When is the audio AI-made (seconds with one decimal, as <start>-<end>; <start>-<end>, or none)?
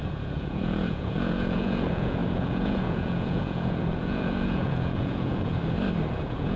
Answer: 0.0-5.6; 6.1-6.6